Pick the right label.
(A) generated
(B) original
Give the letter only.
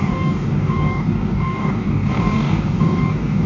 A